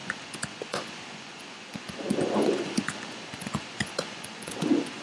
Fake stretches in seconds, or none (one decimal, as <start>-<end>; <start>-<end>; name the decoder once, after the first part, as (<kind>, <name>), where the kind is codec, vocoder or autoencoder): 0.0-5.0 (vocoder, Vocos)